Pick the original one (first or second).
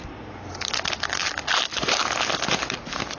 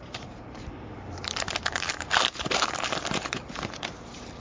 first